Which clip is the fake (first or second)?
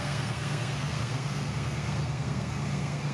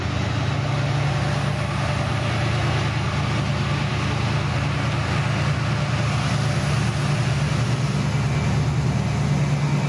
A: first